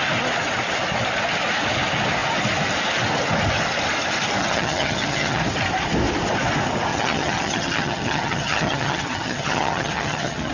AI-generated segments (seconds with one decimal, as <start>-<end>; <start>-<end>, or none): 4.4-5.4; 6.9-10.5